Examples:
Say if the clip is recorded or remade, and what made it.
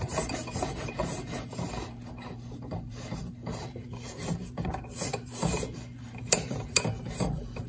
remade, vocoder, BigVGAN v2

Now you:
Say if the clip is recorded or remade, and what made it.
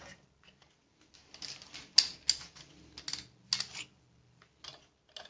recorded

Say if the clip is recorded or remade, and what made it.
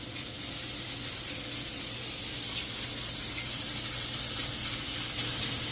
recorded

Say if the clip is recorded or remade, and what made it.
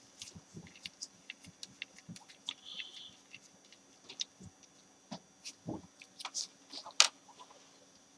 recorded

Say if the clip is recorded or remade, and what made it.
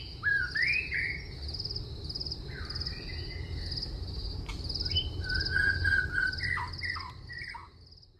recorded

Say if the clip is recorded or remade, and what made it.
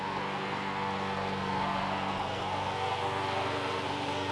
remade, codec, SNAC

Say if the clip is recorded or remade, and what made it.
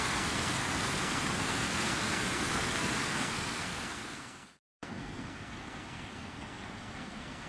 remade, codec, SNAC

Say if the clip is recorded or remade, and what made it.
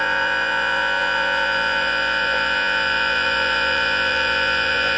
remade, vocoder, Vocos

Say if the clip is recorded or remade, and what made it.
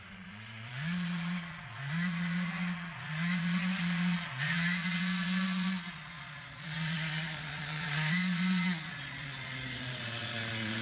remade, vocoder, Vocos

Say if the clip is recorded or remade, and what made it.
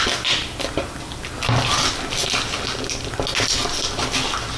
recorded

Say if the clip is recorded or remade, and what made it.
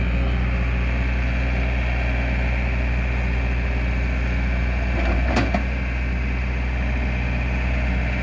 recorded